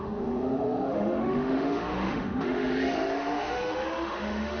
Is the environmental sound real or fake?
fake